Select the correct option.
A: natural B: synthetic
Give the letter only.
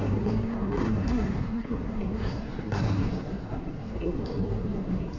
B